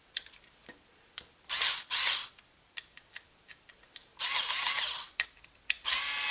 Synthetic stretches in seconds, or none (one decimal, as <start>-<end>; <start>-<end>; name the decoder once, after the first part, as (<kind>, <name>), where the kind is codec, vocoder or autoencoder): 0.0-6.3 (vocoder, BigVGAN v2)